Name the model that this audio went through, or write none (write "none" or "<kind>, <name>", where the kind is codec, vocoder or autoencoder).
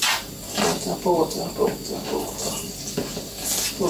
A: none